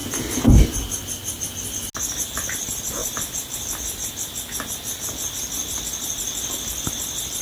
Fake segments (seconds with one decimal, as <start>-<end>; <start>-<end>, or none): none